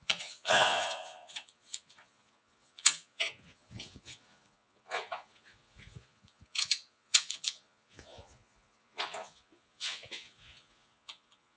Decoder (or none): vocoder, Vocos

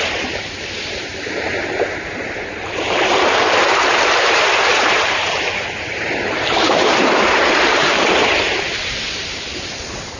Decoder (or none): vocoder, BigVGAN v2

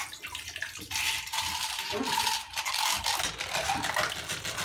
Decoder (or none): none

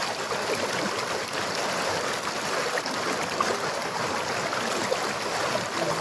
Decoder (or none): none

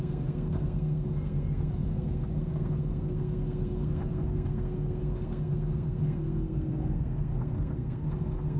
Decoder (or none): codec, SNAC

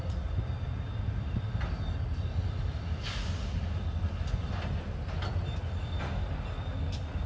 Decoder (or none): none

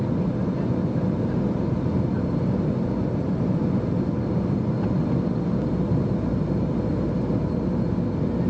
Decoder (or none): none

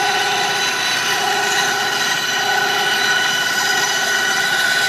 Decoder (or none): none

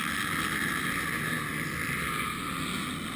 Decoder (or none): none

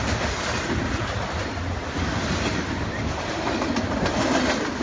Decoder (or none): none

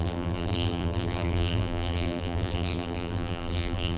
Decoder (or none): vocoder, BigVGAN v2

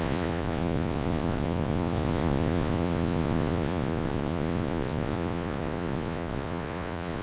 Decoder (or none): vocoder, Vocos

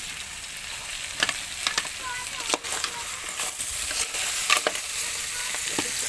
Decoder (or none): none